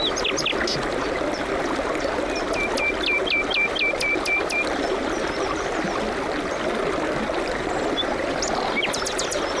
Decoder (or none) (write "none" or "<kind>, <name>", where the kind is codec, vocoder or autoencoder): none